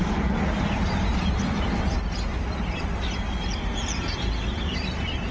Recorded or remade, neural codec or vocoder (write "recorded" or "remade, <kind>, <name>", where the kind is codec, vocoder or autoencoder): recorded